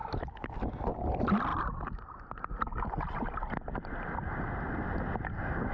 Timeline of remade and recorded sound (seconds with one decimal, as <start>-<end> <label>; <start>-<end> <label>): 0.0-5.7 recorded